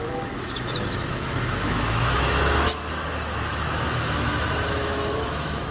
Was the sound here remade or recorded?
remade